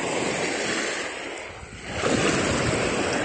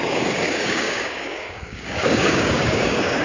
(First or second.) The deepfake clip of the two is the second